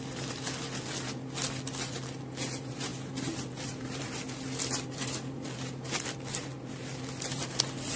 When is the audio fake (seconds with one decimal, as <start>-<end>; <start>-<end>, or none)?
none